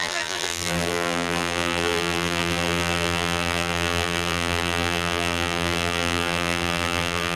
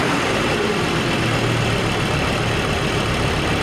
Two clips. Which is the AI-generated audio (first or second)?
first